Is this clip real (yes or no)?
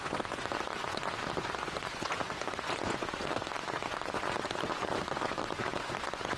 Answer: no